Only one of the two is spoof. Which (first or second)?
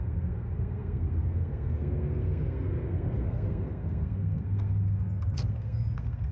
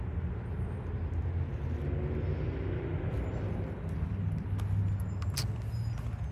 first